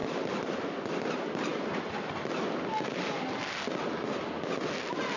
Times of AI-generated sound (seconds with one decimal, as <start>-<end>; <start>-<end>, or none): none